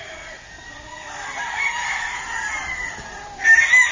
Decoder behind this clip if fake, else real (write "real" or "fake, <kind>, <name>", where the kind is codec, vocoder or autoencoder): real